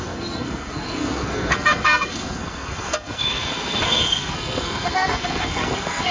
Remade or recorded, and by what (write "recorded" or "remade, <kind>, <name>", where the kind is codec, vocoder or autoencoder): remade, codec, SNAC